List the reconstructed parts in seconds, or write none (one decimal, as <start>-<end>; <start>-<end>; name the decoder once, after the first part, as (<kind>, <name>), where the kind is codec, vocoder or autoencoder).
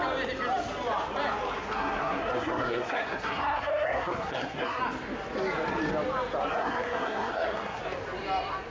1.7-4.8 (codec, SNAC); 6.5-7.8